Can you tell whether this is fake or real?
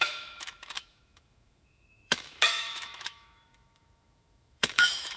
fake